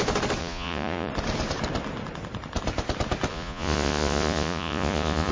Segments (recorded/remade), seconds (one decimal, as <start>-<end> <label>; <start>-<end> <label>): 0.0-0.4 recorded; 0.4-1.1 remade; 1.1-3.3 recorded; 3.3-5.3 remade